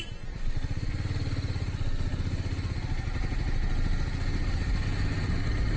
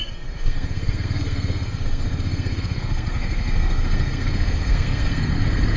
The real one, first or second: first